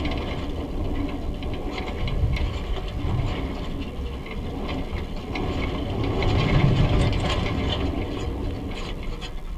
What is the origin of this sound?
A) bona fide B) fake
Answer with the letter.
A